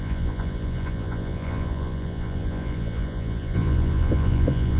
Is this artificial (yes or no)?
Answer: yes